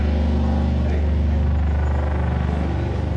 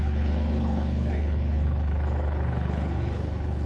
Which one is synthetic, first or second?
second